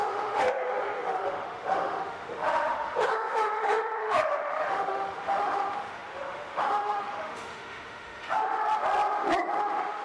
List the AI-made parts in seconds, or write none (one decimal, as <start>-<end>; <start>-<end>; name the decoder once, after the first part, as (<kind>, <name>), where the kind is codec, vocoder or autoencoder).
0.0-8.6 (autoencoder, DAC-VAE); 9.6-10.0